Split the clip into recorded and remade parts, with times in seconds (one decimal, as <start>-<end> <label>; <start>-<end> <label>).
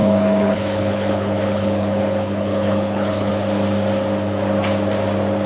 0.0-3.3 remade; 3.3-5.5 recorded